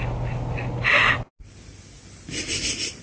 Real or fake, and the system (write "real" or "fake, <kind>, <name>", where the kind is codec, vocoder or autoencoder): real